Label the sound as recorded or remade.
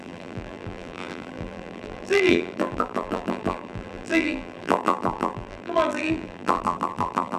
remade